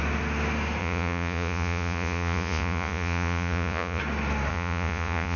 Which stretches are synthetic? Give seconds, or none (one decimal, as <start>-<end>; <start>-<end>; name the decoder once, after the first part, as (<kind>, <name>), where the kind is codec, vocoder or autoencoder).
0.8-4.0 (vocoder, Vocos); 4.5-5.4